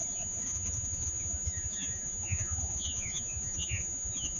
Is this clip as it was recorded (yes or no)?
no